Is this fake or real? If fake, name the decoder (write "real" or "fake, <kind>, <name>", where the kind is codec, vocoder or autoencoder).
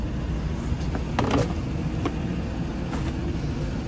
real